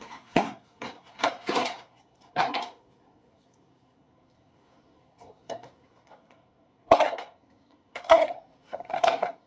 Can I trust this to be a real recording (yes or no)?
no